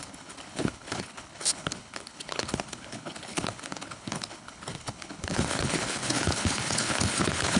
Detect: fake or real fake